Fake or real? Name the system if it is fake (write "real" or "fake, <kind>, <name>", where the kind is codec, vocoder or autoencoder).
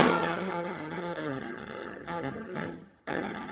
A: fake, vocoder, HiFi-GAN